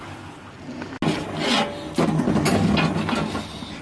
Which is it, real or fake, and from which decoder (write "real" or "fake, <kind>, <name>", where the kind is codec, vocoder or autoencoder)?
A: real